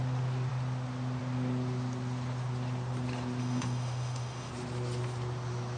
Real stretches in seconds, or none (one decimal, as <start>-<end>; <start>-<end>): 0.0-3.4; 4.5-5.8